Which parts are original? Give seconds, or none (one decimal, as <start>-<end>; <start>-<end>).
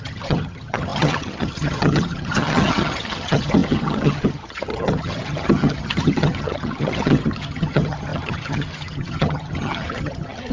none